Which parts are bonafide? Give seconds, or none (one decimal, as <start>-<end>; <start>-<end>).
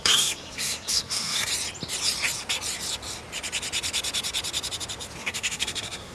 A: 1.5-5.2